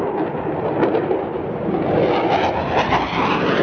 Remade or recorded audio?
recorded